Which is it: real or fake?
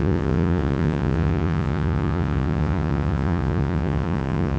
fake